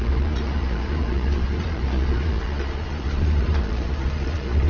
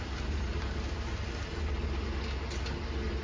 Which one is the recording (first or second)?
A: second